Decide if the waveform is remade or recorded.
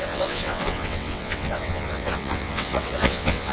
remade